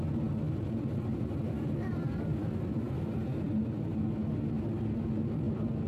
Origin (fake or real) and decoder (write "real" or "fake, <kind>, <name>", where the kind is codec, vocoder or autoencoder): real